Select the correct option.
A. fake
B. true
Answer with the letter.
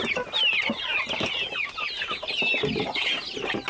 B